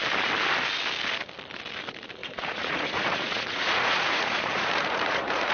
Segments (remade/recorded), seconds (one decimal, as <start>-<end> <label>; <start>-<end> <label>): 0.0-2.2 recorded; 2.2-5.5 remade